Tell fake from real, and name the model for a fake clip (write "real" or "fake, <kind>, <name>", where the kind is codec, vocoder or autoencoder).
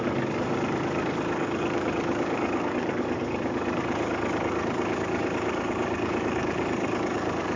fake, codec, DAC